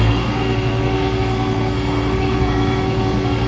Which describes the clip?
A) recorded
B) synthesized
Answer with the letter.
B